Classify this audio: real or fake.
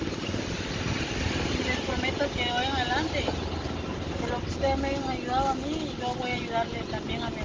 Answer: real